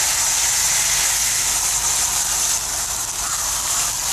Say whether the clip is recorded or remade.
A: recorded